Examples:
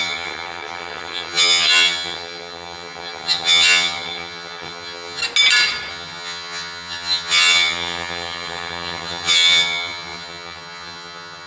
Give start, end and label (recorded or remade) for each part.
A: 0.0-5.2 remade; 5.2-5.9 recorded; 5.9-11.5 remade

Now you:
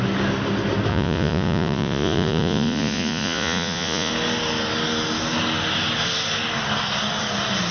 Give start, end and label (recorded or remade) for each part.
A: 0.0-0.9 recorded; 0.9-4.1 remade; 4.1-7.7 recorded

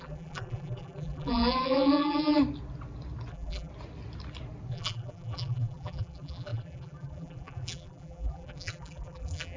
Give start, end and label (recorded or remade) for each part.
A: 0.0-2.4 remade; 2.4-3.3 recorded; 3.3-3.7 remade; 3.7-4.7 recorded; 4.7-9.6 remade

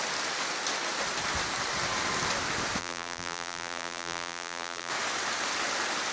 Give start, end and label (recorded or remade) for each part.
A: 0.0-2.8 recorded; 2.8-4.9 remade; 4.9-6.1 recorded